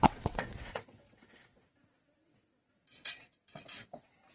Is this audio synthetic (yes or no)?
yes